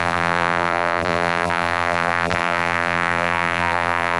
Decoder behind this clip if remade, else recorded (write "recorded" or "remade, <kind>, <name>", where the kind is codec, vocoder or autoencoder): remade, vocoder, BigVGAN v2